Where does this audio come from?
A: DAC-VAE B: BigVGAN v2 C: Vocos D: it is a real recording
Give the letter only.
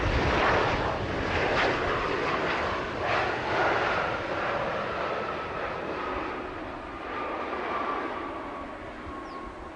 D